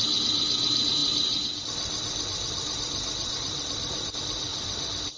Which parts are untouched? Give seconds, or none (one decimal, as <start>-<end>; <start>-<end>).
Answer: 0.0-1.0; 4.1-4.5